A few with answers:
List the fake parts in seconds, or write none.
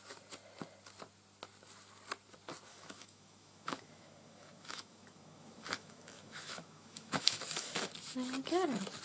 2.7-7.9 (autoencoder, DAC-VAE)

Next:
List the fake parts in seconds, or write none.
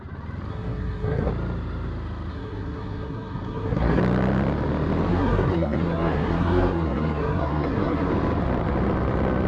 0.5-1.3 (codec, SNAC); 2.3-4.0; 5.1-8.1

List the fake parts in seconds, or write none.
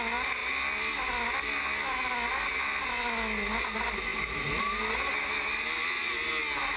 none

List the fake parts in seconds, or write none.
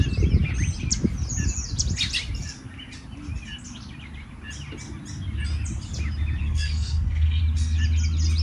6.4-7.4 (codec, SNAC)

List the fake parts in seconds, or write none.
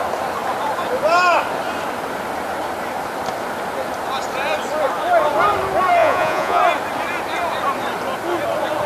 6.0-6.6 (vocoder, Vocos)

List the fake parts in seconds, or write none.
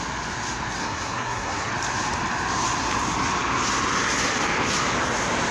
0.8-1.7 (codec, SNAC)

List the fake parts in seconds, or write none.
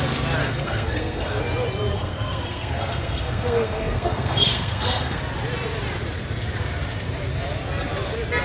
0.4-1.4 (codec, SNAC); 1.9-5.2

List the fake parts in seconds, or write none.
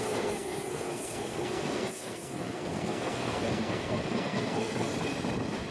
0.0-4.9 (codec, SNAC)